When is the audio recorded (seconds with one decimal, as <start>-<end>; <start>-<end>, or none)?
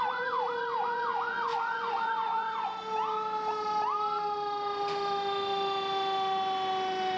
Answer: 2.7-7.2